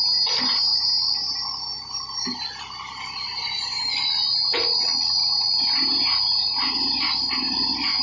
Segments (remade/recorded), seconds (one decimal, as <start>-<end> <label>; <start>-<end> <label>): 0.0-8.0 recorded